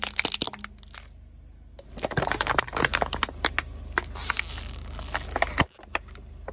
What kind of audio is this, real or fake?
real